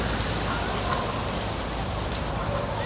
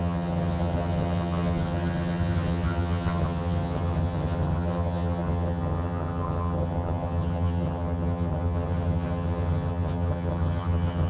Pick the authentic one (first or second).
first